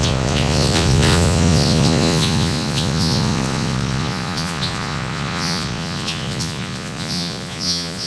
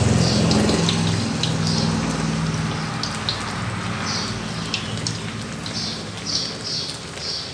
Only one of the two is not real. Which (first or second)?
first